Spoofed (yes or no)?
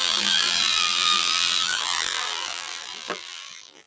yes